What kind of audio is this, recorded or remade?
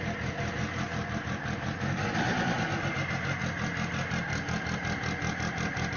recorded